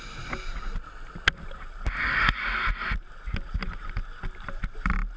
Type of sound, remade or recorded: recorded